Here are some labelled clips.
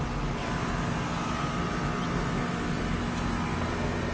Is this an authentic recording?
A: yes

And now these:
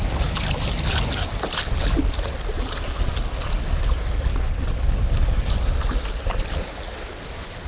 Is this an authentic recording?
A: yes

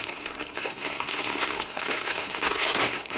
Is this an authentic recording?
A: no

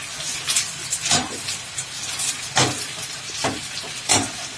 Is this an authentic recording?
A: yes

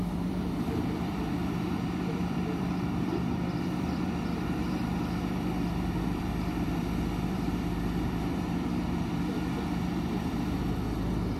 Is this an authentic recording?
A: no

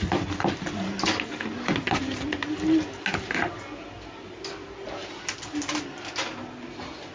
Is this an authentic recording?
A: yes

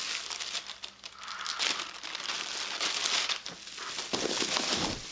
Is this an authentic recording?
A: yes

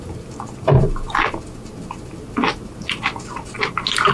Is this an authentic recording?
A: yes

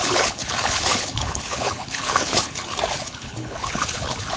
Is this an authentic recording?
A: no